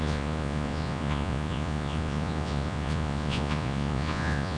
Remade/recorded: remade